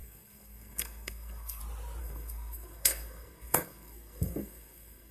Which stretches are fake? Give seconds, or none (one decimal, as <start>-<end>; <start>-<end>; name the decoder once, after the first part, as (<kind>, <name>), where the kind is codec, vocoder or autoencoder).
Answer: 0.0-1.6 (codec, SNAC); 2.0-5.1